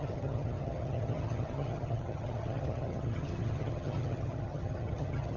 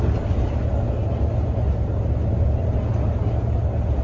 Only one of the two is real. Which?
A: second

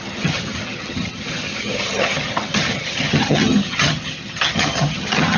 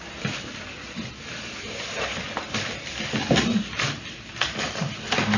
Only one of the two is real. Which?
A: second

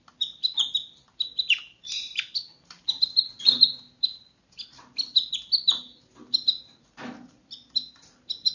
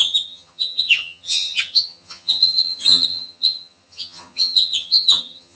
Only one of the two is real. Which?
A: first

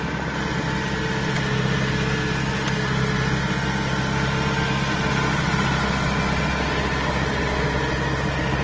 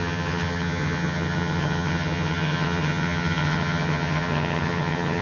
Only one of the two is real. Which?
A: first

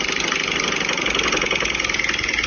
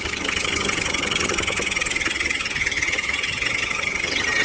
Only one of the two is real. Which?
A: first